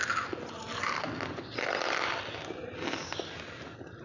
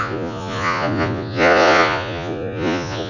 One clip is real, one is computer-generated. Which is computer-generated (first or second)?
second